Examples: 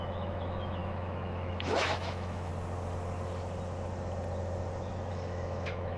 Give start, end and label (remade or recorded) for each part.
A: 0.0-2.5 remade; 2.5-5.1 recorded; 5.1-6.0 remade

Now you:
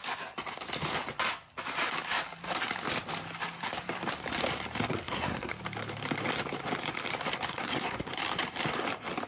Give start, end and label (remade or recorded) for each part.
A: 0.0-4.9 recorded; 4.9-5.5 remade; 5.5-7.5 recorded; 7.5-8.1 remade; 8.1-9.3 recorded